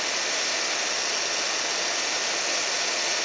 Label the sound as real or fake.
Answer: real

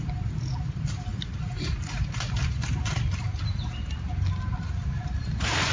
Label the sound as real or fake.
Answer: real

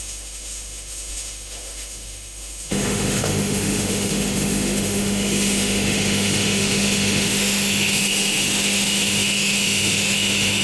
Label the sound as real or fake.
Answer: fake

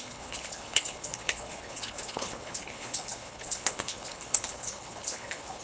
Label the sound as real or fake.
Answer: fake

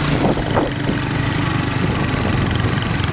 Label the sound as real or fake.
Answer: real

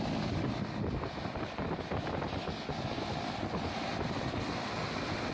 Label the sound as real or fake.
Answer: real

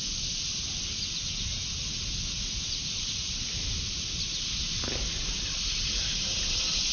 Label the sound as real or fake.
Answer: real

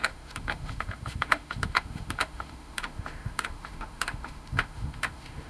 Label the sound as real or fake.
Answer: fake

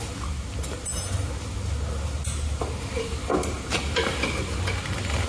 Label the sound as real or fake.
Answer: real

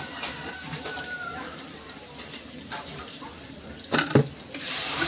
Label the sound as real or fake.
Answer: fake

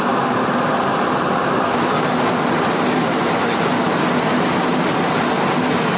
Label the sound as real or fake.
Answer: real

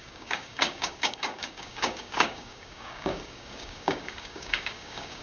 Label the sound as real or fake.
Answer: fake